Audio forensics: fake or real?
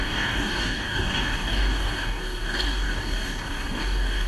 fake